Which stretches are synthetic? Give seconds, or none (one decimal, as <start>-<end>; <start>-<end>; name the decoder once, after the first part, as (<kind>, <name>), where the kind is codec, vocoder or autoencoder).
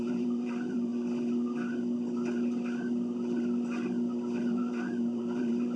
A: 0.0-0.9 (vocoder, BigVGAN v2); 4.4-5.8